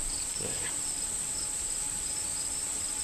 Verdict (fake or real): fake